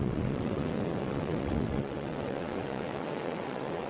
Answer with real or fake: fake